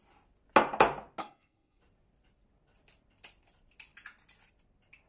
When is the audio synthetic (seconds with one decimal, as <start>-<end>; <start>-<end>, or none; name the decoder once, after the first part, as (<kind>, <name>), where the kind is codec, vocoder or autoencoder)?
1.2-1.8 (codec, SNAC)